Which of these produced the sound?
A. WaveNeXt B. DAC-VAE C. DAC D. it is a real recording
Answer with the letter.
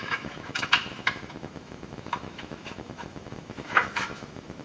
B